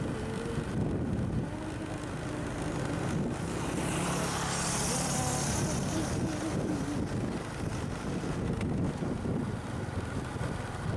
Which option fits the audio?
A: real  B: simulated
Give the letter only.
A